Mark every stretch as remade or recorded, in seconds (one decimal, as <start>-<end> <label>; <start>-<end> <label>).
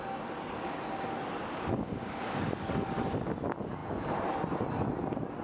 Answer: 0.0-1.4 recorded; 1.4-2.4 remade; 2.4-5.4 recorded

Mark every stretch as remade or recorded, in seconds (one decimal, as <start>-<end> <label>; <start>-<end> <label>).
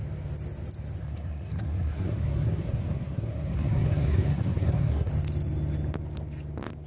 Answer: 0.0-1.0 recorded; 1.0-5.1 remade; 5.1-6.9 recorded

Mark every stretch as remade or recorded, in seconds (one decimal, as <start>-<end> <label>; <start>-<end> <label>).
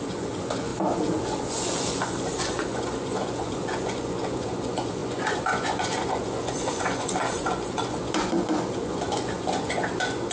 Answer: 0.0-10.3 remade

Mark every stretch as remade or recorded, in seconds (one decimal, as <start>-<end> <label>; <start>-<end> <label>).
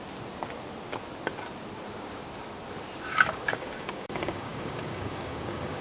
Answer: 0.0-3.1 recorded; 3.1-5.8 remade